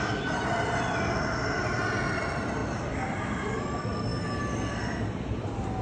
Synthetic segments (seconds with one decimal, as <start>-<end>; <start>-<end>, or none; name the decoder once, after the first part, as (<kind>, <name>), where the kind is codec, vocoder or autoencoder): none